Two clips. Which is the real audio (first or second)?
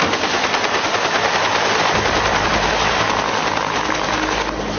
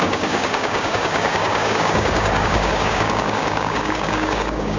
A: first